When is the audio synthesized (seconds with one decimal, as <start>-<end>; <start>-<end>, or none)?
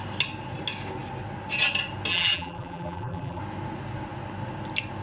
2.1-3.4